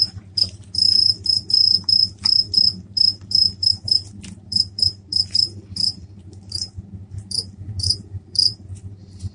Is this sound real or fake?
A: fake